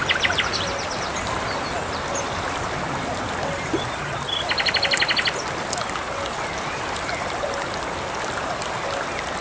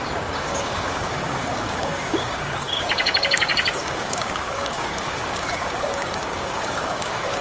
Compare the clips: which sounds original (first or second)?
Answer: first